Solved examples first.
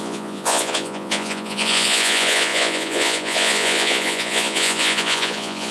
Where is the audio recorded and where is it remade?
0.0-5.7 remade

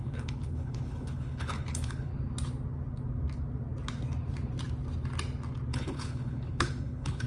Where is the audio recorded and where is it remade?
0.0-2.1 remade; 2.1-5.7 recorded; 5.7-7.3 remade